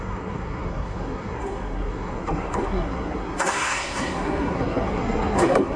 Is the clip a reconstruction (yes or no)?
yes